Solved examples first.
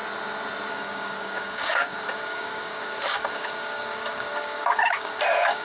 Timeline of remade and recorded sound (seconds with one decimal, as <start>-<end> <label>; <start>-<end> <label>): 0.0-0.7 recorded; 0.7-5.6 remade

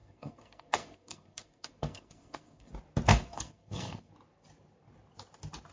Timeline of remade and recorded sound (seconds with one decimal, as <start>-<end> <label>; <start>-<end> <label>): 0.0-2.7 remade; 2.7-3.1 recorded; 3.1-4.1 remade; 4.1-5.7 recorded

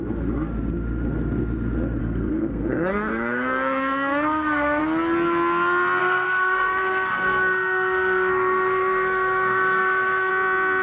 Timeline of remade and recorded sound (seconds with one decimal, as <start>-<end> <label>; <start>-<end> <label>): 0.0-2.0 recorded; 2.0-4.8 remade; 4.8-6.0 recorded; 6.0-10.3 remade; 10.3-10.8 recorded